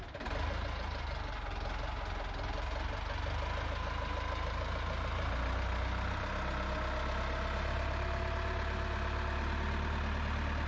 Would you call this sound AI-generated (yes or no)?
no